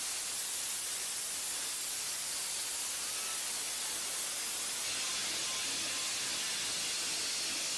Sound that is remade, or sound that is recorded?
recorded